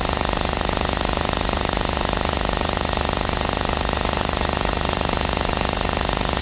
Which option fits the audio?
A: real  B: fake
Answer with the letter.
B